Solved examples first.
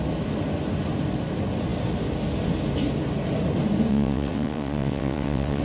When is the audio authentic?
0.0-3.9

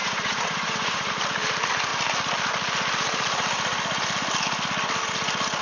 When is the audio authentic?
1.1-5.6

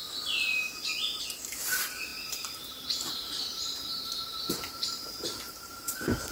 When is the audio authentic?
0.0-1.2

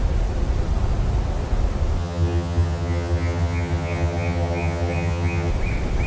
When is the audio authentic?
0.0-2.0; 5.5-6.1

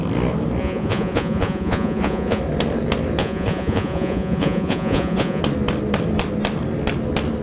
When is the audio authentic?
0.0-0.6; 2.4-3.2; 5.4-7.4